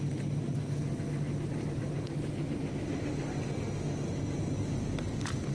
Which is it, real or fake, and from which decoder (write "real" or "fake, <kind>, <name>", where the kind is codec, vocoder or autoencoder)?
real